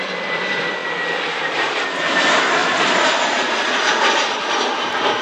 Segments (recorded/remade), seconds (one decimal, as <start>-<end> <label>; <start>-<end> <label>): 0.0-5.2 recorded